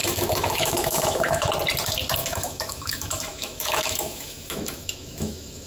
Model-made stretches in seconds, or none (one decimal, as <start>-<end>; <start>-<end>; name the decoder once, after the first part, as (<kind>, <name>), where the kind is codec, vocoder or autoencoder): 0.0-1.5 (autoencoder, DAC-VAE); 2.2-5.7